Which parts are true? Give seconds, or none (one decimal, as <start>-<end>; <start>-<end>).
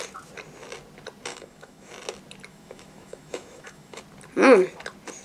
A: 0.0-1.3; 1.9-2.5; 4.0-5.2